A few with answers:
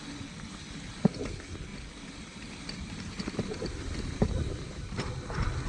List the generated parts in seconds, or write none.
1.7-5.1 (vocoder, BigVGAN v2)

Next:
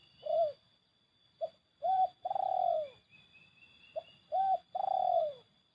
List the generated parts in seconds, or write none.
0.0-2.5 (vocoder, BigVGAN v2); 4.1-5.7